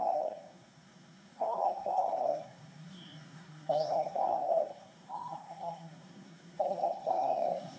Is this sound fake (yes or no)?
yes